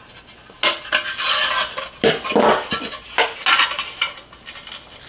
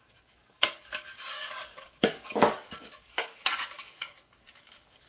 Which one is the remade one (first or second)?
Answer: second